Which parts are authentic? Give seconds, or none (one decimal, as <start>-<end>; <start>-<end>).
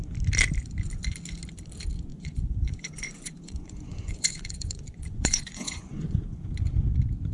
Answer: 0.0-2.1; 6.5-7.3